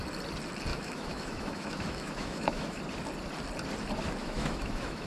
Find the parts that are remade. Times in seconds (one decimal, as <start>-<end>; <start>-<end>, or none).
0.7-2.8; 4.2-5.1